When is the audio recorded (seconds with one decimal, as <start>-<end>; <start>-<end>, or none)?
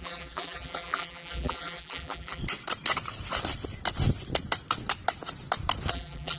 2.4-5.9